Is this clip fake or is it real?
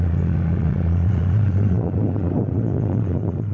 fake